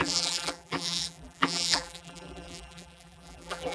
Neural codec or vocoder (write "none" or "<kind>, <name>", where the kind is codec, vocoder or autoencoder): vocoder, BigVGAN v2